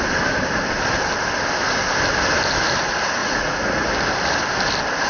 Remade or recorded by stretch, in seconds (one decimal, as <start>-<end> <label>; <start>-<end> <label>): 0.0-3.2 recorded; 3.2-3.9 remade; 3.9-5.1 recorded